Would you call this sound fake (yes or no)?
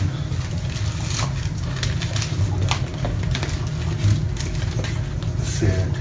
no